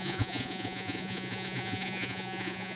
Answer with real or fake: fake